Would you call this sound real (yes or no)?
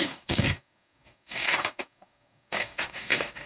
no